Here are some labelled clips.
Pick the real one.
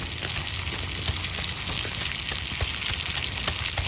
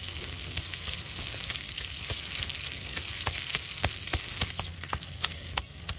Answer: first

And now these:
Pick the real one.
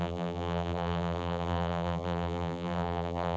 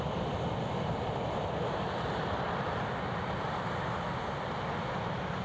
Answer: second